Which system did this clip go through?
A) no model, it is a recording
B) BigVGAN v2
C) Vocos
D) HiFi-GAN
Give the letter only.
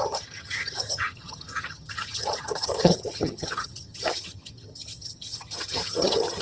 D